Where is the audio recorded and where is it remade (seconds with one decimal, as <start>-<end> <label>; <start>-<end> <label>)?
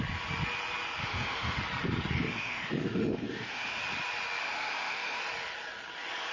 0.0-1.0 recorded; 1.0-1.6 remade; 1.6-2.2 recorded; 2.2-3.8 remade; 3.8-4.4 recorded; 4.4-5.2 remade; 5.2-6.3 recorded